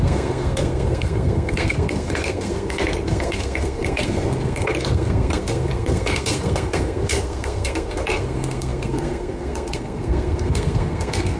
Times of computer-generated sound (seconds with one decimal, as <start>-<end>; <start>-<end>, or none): 0.0-11.4